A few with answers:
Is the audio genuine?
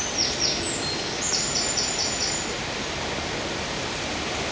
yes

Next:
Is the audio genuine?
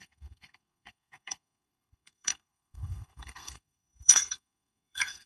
no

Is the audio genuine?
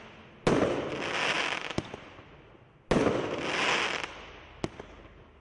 yes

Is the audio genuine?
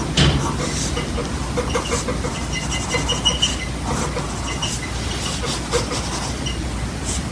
yes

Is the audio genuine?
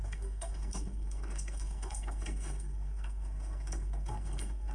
no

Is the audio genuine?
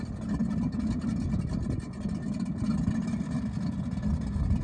yes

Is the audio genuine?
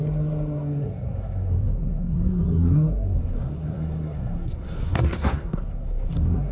no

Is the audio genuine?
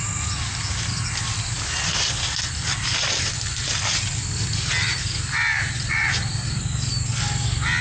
yes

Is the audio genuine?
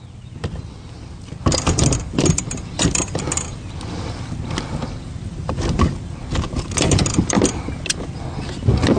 yes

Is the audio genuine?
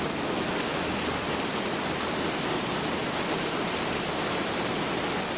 yes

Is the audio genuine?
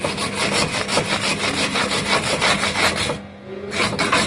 yes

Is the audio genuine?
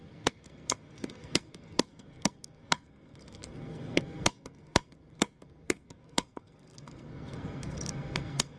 no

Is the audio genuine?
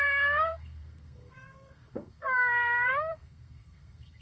no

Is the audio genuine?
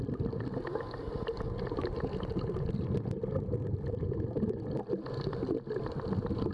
yes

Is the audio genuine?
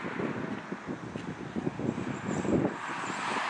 yes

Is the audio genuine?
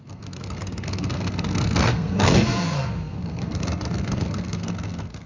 no